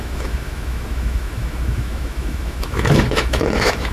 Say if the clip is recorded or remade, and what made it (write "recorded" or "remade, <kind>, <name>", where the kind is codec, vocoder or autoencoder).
remade, autoencoder, DAC-VAE